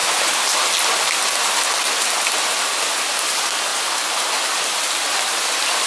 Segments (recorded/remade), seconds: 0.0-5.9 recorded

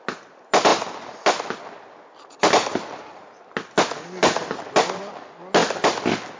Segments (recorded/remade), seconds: 0.0-5.6 recorded; 5.6-6.4 remade

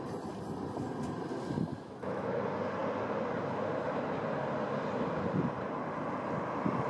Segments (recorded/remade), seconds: 0.0-1.7 recorded; 1.7-2.4 remade; 2.4-6.9 recorded

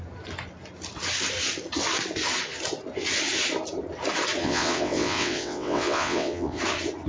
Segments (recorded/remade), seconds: 0.0-4.4 recorded; 4.4-6.6 remade; 6.6-7.1 recorded

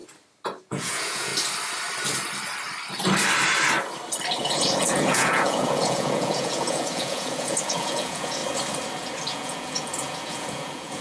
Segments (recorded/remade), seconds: 0.0-0.6 recorded; 0.6-1.3 remade; 1.3-4.4 recorded; 4.4-8.4 remade; 8.4-9.3 recorded; 9.3-11.0 remade

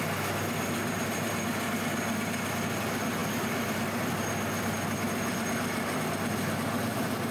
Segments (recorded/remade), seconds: 0.0-0.8 recorded; 0.8-1.3 remade; 1.3-7.3 recorded

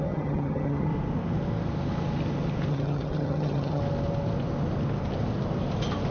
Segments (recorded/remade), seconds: 0.0-0.9 remade; 0.9-2.7 recorded; 2.7-3.8 remade; 3.8-6.1 recorded

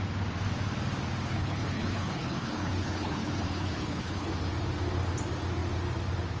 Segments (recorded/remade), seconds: 0.0-1.3 recorded; 1.3-4.3 remade; 4.3-6.4 recorded